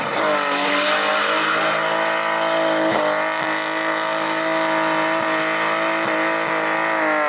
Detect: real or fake real